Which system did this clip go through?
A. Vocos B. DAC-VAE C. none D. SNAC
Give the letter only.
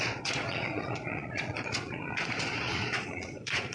A